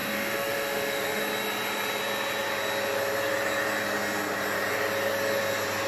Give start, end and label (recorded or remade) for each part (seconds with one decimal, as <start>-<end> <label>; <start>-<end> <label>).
0.0-1.2 remade; 1.2-5.9 recorded